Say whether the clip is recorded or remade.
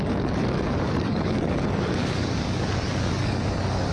remade